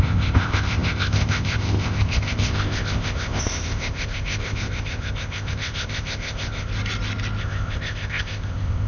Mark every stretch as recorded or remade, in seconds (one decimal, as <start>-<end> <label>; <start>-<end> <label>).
0.0-6.7 remade; 6.7-7.4 recorded; 7.4-8.9 remade

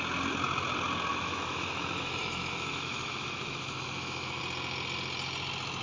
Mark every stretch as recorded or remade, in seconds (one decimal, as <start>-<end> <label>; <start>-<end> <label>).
0.0-1.1 recorded; 1.1-4.4 remade; 4.4-5.8 recorded

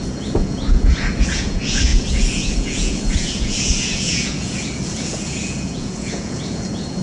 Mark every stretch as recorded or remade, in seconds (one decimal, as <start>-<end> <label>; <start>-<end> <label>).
0.0-7.0 remade